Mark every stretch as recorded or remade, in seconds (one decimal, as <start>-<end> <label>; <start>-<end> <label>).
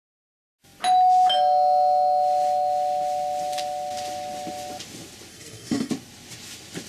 0.0-5.3 recorded; 5.3-5.9 remade; 5.9-6.9 recorded